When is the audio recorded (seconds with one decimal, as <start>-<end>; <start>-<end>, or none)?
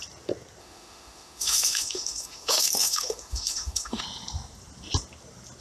0.0-0.6; 4.0-5.6